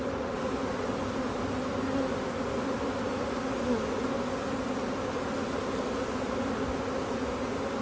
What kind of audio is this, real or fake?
real